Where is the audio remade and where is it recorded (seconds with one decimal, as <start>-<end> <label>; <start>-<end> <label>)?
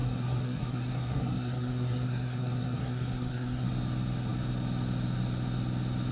0.0-3.7 remade; 3.7-6.1 recorded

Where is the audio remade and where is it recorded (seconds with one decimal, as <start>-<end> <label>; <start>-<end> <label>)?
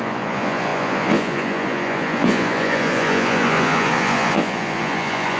0.0-5.4 remade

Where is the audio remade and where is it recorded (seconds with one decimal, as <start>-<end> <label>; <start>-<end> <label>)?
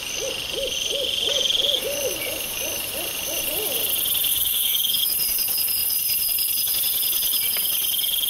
0.0-4.3 recorded; 4.3-5.0 remade; 5.0-8.3 recorded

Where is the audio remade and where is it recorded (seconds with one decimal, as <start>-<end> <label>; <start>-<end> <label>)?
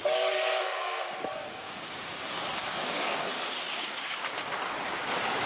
0.0-3.3 remade; 3.3-3.7 recorded; 3.7-5.5 remade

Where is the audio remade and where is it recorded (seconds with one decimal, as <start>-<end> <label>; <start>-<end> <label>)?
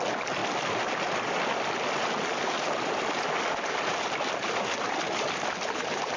0.0-6.2 recorded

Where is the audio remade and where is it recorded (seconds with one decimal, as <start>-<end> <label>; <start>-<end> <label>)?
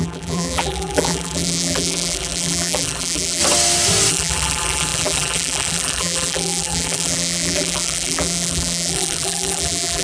0.0-3.4 remade; 3.4-4.1 recorded; 4.1-10.0 remade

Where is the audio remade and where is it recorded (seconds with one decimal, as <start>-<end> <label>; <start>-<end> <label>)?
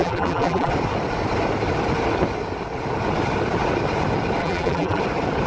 0.0-0.7 remade; 0.7-4.4 recorded; 4.4-5.0 remade; 5.0-5.5 recorded